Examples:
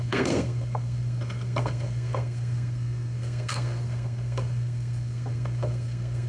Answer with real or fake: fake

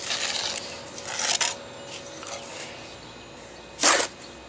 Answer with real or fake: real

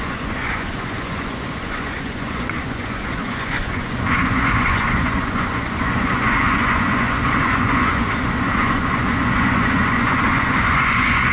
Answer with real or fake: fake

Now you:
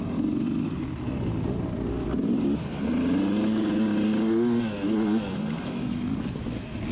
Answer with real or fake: real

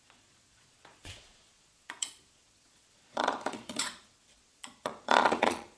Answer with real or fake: fake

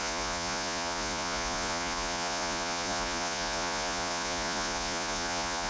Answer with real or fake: fake